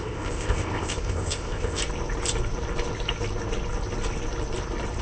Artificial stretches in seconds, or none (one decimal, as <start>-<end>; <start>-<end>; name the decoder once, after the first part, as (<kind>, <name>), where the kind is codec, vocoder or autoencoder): 0.0-1.8 (codec, ZipCodec)